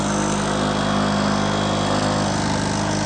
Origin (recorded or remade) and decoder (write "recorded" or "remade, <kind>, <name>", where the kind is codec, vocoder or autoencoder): recorded